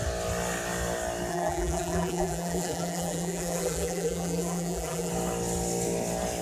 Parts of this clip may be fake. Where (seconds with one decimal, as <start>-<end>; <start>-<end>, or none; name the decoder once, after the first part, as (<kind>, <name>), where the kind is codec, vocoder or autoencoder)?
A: 1.3-5.1 (vocoder, BigVGAN v2)